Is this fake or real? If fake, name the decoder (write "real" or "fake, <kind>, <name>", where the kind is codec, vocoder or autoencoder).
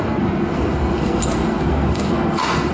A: fake, codec, SNAC